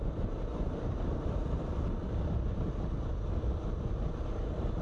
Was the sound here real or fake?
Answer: real